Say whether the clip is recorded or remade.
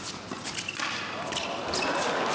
recorded